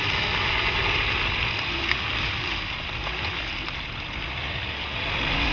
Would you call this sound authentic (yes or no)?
yes